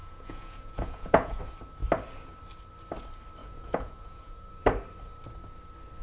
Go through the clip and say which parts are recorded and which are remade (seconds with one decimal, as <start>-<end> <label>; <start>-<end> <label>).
0.0-1.4 remade; 1.4-3.4 recorded; 3.4-4.5 remade; 4.5-6.0 recorded